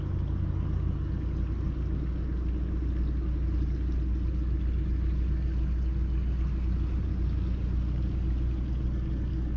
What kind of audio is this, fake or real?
real